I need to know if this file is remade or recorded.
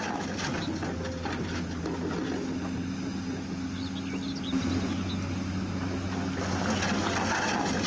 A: recorded